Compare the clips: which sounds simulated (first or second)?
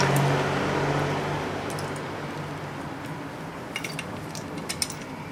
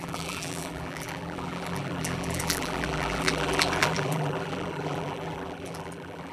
second